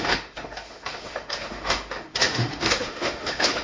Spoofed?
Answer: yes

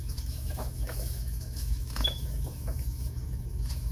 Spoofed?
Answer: yes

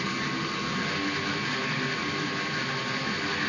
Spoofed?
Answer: no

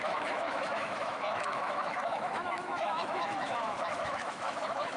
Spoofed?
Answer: yes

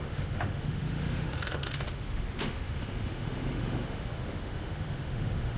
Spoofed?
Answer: yes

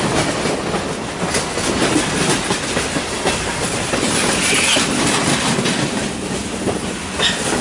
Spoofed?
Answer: no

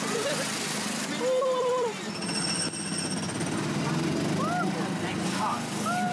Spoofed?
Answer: no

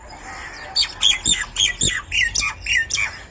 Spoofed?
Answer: no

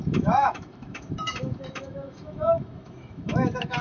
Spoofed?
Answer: yes